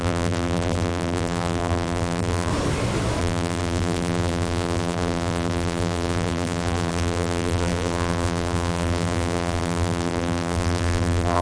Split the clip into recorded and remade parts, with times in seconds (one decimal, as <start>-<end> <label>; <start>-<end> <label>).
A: 0.0-2.5 remade; 2.5-3.2 recorded; 3.2-11.4 remade